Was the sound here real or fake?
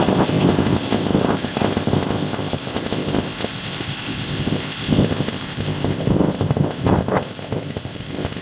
fake